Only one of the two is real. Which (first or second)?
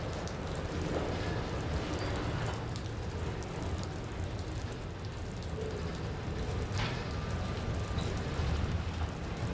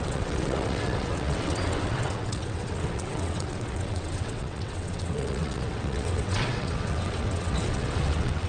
first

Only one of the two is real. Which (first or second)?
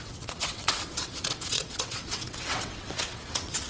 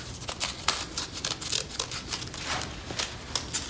second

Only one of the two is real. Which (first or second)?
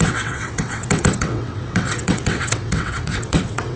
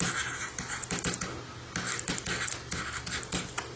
second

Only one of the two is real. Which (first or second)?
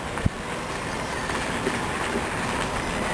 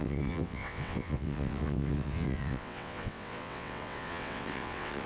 first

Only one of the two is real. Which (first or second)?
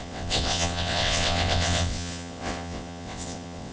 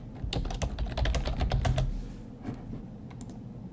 second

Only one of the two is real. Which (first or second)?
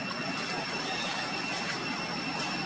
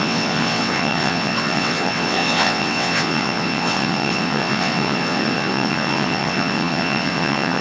first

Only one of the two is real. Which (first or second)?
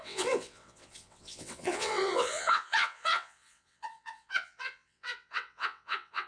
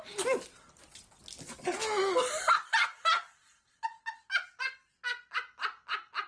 second